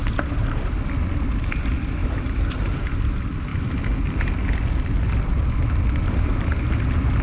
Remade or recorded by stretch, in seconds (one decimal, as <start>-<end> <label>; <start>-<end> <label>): 0.0-0.7 remade; 0.7-2.0 recorded; 2.0-2.9 remade; 2.9-7.2 recorded